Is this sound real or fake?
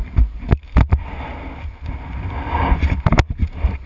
real